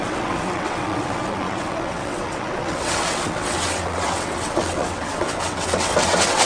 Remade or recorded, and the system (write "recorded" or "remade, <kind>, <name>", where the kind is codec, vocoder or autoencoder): remade, vocoder, WaveNeXt